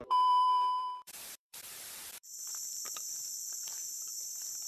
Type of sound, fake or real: fake